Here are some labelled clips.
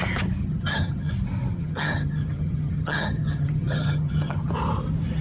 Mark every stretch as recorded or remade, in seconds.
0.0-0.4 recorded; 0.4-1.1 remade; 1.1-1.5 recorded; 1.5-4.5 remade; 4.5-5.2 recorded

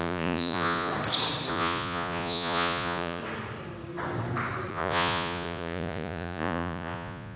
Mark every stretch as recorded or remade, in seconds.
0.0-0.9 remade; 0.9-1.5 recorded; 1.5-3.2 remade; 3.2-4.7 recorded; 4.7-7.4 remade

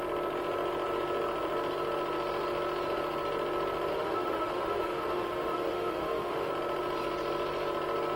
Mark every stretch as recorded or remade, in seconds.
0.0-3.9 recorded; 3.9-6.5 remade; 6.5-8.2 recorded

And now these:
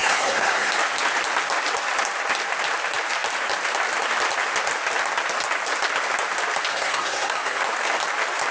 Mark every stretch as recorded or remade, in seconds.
0.0-0.7 remade; 0.7-6.7 recorded; 6.7-7.6 remade; 7.6-8.5 recorded

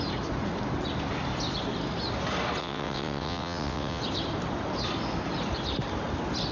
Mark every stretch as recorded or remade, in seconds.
0.0-2.6 recorded; 2.6-4.0 remade; 4.0-6.5 recorded